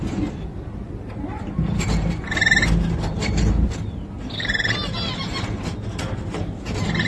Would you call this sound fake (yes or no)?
no